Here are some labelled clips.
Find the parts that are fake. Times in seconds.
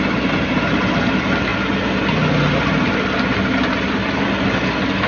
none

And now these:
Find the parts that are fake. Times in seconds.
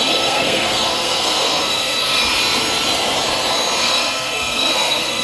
0.0-2.2; 3.8-5.2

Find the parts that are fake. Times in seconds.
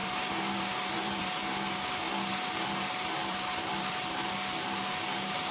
0.0-1.4; 3.2-3.9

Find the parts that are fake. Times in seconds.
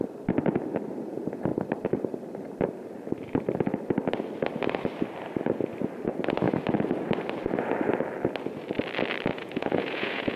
9.3-10.4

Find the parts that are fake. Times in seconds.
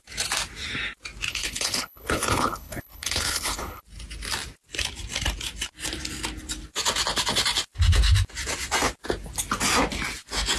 1.3-3.8